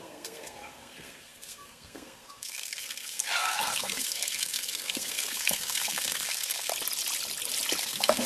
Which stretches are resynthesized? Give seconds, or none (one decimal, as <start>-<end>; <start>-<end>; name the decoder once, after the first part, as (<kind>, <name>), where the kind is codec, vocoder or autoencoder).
0.0-6.7 (codec, SNAC); 7.8-8.3